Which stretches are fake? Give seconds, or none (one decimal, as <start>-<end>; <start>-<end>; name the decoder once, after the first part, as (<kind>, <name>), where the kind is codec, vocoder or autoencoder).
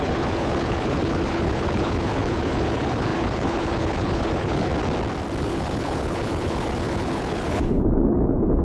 0.0-4.7 (codec, HILCodec); 5.4-8.6